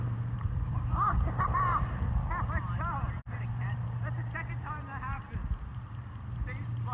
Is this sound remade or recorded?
remade